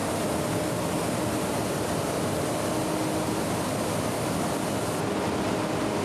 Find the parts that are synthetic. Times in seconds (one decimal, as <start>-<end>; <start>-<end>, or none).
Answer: none